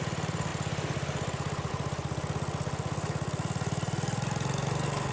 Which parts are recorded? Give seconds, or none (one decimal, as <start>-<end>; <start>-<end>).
0.0-5.1